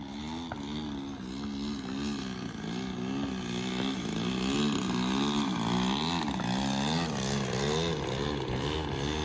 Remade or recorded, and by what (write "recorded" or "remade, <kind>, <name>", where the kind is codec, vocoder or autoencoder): recorded